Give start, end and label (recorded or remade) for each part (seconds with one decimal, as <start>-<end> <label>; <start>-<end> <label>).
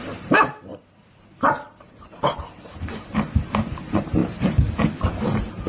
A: 0.0-4.2 remade; 4.2-4.8 recorded; 4.8-5.7 remade